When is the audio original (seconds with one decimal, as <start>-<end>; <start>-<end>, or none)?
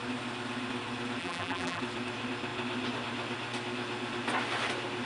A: 0.0-1.2; 1.8-5.1